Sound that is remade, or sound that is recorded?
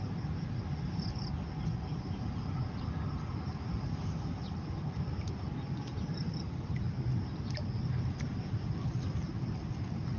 recorded